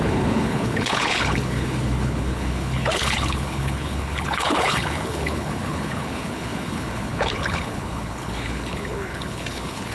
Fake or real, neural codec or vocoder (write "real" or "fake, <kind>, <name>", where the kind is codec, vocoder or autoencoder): fake, codec, HILCodec